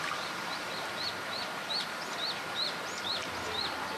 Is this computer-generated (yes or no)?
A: no